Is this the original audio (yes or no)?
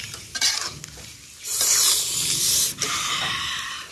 yes